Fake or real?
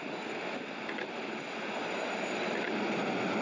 real